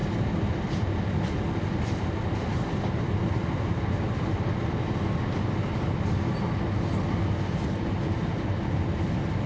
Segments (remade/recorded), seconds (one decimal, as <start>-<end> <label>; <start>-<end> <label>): 0.0-9.5 recorded